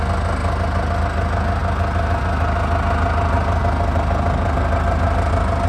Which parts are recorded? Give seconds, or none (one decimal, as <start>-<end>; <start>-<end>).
0.0-5.7